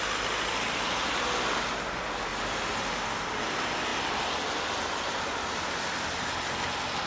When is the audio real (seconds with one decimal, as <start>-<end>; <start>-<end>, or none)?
0.0-7.1